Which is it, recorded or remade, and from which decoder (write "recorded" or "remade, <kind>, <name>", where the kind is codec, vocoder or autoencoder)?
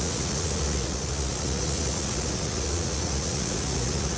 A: remade, vocoder, Vocos